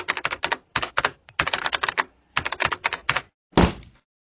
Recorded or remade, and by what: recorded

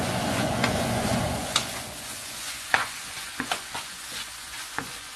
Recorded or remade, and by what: remade, vocoder, Vocos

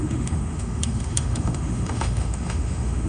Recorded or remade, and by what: remade, autoencoder, DAC-VAE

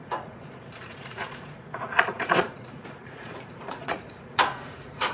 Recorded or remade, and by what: remade, vocoder, Vocos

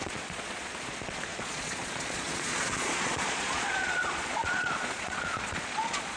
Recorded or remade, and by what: remade, vocoder, Vocos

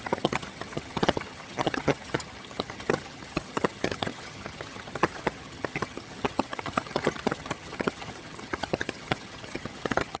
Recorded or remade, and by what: remade, vocoder, HiFi-GAN